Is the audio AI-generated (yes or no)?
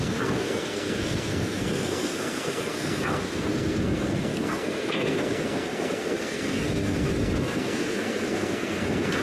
yes